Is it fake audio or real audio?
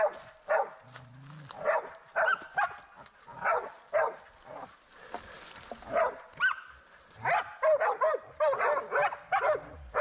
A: real